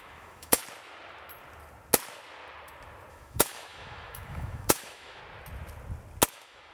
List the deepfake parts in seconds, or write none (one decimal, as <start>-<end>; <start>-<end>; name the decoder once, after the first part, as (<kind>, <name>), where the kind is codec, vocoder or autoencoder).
0.0-0.6 (autoencoder, DAC-VAE); 3.1-5.2; 6.3-6.7